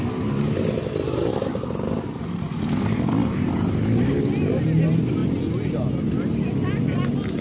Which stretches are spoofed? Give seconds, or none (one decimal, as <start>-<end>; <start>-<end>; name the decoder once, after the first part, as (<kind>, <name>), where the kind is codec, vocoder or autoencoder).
none